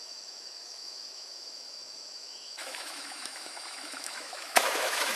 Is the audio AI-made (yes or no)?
yes